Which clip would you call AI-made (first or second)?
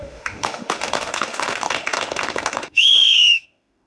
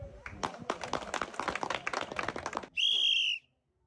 first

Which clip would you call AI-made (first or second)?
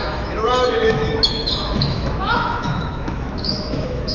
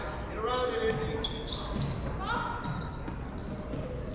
first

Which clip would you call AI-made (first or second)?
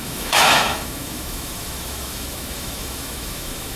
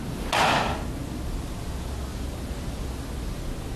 first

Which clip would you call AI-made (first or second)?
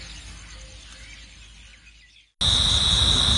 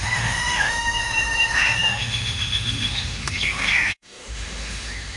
second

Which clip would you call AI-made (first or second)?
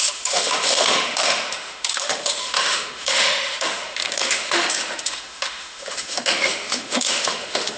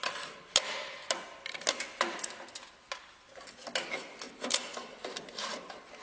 first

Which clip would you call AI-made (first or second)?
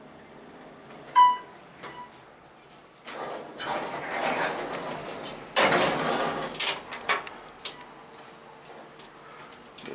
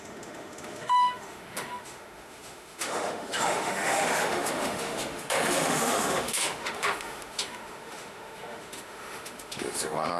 second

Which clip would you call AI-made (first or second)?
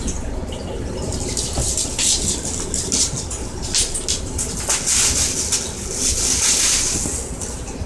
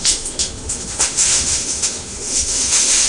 second